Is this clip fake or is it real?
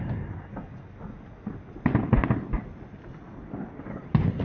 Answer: real